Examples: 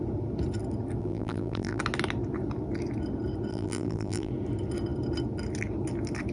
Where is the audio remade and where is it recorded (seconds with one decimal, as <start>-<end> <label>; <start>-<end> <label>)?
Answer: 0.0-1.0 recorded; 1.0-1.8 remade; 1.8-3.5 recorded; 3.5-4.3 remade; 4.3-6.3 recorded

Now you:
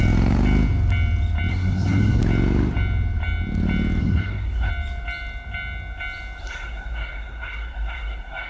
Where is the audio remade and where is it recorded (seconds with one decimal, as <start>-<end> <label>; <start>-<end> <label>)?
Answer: 0.0-1.5 recorded; 1.5-2.2 remade; 2.2-4.0 recorded; 4.0-4.7 remade; 4.7-6.4 recorded; 6.4-8.5 remade

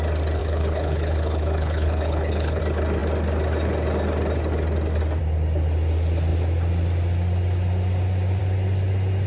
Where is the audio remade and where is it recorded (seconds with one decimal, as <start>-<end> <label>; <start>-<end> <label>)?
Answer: 0.0-0.4 recorded; 0.4-2.6 remade; 2.6-9.3 recorded

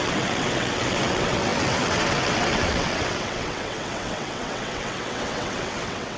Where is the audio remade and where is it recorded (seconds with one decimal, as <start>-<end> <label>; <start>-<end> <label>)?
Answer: 0.0-6.2 remade